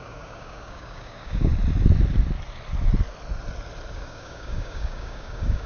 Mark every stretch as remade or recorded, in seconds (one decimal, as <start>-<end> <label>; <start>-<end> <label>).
0.0-1.5 remade; 1.5-3.9 recorded; 3.9-5.7 remade